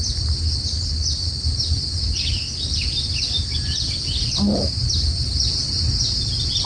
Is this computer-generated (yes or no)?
no